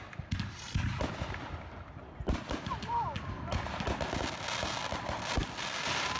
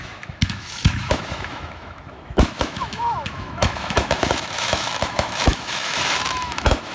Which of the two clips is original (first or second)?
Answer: first